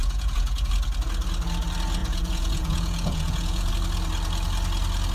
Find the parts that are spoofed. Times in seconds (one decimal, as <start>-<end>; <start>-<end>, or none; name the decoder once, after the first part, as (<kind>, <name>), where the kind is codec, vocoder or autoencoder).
0.0-0.7 (vocoder, Vocos); 2.0-3.7